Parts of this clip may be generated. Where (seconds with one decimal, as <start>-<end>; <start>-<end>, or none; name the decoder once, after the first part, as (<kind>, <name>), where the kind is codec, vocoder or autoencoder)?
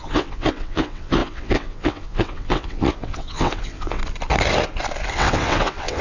0.0-4.0 (vocoder, WaveNeXt); 5.1-6.0